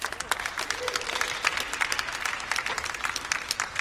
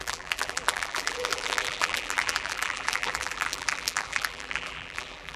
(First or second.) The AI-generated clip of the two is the second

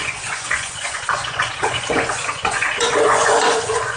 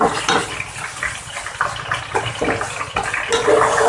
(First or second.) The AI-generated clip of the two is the first